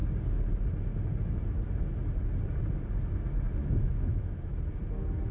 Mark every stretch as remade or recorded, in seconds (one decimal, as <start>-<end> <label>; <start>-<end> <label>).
0.0-3.6 recorded; 3.6-4.4 remade; 4.4-5.3 recorded